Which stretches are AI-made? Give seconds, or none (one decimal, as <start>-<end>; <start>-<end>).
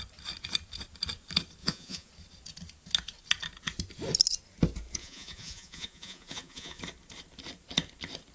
1.6-2.1; 5.0-6.8